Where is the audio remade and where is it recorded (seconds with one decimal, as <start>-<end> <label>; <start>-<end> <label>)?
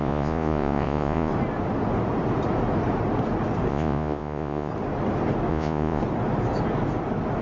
0.0-1.3 remade; 1.3-3.7 recorded; 3.7-4.7 remade; 4.7-5.5 recorded; 5.5-6.0 remade; 6.0-7.4 recorded